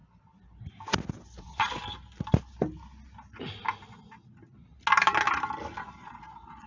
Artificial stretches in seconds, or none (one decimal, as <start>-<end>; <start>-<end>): 1.4-1.8; 5.8-6.7